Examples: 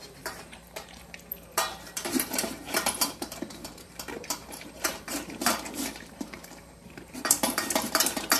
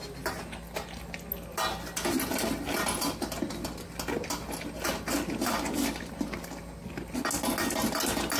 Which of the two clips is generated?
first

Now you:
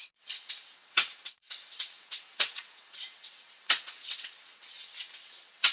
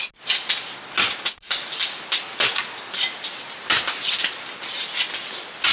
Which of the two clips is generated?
first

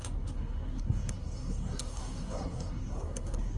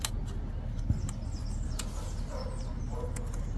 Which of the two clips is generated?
first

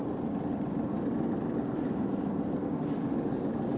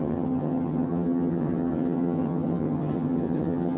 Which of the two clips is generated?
second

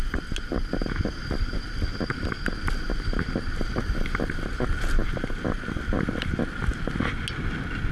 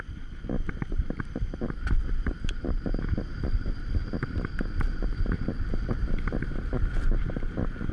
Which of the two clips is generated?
second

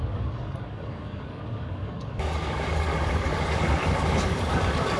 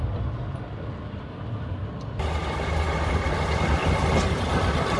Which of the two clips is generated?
first